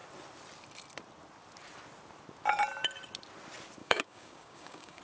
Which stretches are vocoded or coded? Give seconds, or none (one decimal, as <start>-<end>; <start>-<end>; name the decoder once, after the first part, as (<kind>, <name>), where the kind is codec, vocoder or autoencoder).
3.8-5.0 (codec, DAC)